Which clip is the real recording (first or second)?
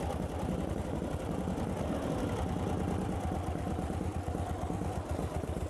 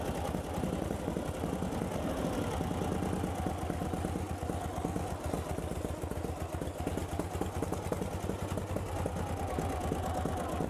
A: second